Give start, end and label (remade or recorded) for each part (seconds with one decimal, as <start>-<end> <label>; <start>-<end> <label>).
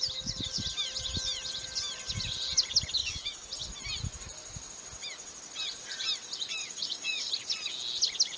0.0-3.0 recorded; 3.0-3.5 remade; 3.5-6.6 recorded; 6.6-7.3 remade; 7.3-8.4 recorded